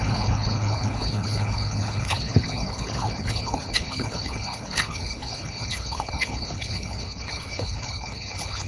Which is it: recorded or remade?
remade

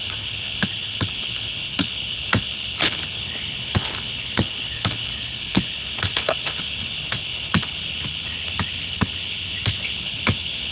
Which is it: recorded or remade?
remade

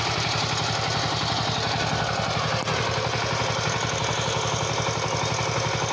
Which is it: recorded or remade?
recorded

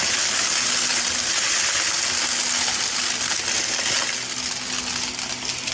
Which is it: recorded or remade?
recorded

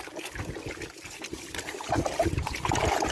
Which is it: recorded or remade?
recorded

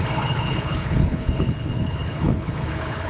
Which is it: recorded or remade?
remade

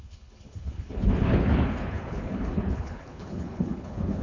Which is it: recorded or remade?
remade